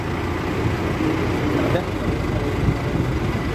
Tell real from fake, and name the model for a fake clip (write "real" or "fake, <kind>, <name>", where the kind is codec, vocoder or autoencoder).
real